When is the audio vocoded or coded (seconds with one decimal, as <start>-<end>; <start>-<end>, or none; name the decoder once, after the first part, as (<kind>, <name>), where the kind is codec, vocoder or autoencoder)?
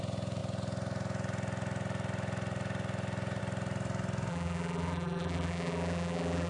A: 4.3-6.5 (vocoder, BigVGAN v2)